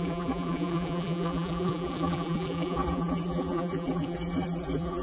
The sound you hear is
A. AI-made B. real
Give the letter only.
A